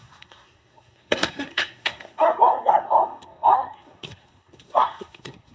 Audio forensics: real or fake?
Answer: fake